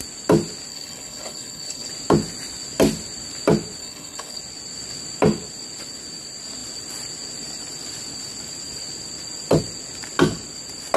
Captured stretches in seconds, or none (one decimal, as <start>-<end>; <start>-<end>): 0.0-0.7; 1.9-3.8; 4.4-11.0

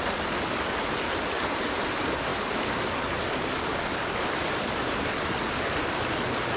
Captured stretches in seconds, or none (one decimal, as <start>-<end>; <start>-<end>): 0.0-3.6; 4.2-6.6

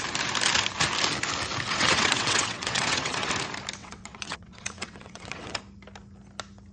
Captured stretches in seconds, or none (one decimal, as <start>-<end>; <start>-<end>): 0.0-1.7; 3.3-3.8; 5.6-6.7

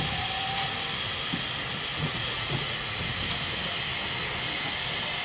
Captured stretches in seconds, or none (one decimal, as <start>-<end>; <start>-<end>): 0.0-1.9; 3.0-5.2

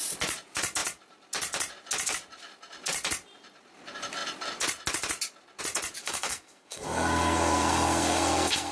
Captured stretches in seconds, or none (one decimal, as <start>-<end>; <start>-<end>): 0.0-6.0

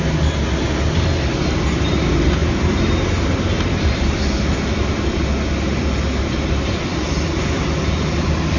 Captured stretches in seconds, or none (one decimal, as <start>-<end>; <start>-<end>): 0.0-8.6